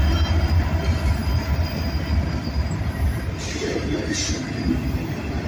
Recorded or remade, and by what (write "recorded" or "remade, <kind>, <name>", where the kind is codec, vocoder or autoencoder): recorded